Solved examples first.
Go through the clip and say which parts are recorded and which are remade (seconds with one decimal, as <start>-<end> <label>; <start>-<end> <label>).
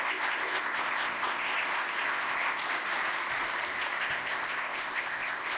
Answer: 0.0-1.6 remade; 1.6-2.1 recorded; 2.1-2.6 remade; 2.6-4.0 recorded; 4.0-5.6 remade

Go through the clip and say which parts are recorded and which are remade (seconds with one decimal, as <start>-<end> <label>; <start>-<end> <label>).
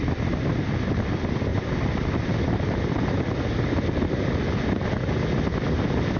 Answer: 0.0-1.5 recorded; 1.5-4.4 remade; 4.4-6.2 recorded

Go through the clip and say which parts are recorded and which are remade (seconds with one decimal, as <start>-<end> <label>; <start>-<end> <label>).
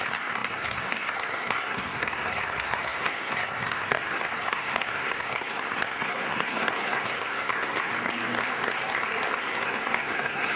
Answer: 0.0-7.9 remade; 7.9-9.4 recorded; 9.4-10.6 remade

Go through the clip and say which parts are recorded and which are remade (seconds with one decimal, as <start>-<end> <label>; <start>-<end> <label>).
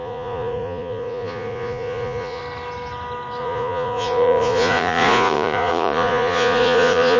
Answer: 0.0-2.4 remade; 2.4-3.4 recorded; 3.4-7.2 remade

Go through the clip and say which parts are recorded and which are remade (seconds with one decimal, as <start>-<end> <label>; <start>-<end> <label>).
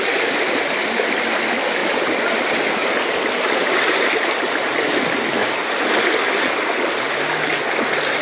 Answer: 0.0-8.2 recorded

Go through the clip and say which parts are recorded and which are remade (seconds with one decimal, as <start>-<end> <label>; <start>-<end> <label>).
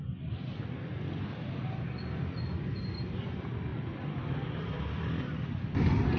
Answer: 0.0-3.7 recorded; 3.7-6.2 remade